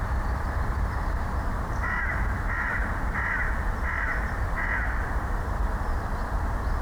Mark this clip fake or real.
fake